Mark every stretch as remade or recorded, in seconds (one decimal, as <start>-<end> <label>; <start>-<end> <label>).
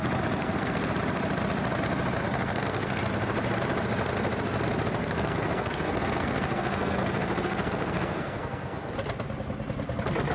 0.0-0.4 recorded; 0.4-0.9 remade; 0.9-2.3 recorded; 2.3-3.0 remade; 3.0-5.0 recorded; 5.0-8.9 remade; 8.9-10.3 recorded